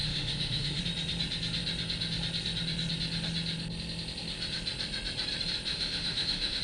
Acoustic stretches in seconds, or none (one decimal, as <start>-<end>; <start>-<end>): 0.8-5.7